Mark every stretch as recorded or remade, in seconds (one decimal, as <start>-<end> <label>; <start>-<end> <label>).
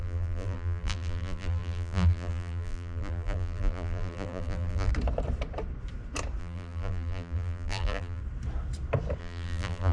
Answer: 0.0-4.9 remade; 4.9-6.4 recorded; 6.4-8.2 remade; 8.2-9.2 recorded; 9.2-9.9 remade